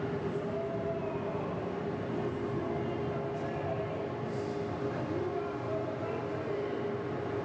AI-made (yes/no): no